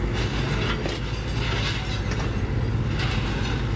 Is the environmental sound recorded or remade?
recorded